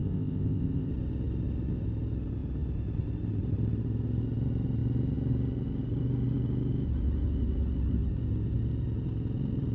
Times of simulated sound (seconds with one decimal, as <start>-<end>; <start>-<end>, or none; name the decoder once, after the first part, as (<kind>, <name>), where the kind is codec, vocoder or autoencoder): 0.0-0.9 (codec, ZipCodec)